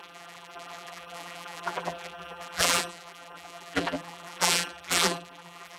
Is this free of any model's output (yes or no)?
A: no